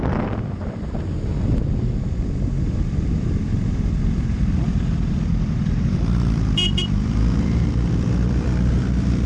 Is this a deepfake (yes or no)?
yes